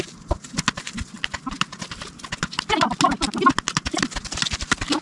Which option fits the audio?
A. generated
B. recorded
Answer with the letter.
B